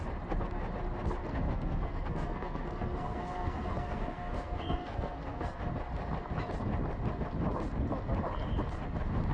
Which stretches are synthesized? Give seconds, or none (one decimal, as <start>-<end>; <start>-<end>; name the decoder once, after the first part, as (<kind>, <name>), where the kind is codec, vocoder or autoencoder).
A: 1.2-5.6 (codec, SNAC)